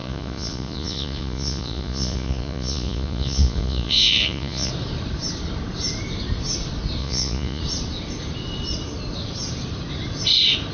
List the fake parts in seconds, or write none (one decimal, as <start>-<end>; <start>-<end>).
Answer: 0.0-4.7; 7.0-7.6